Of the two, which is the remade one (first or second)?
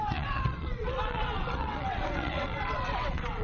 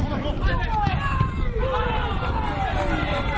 first